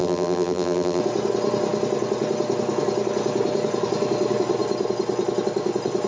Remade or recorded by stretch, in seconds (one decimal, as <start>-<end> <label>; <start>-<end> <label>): 0.0-1.0 remade; 1.0-6.1 recorded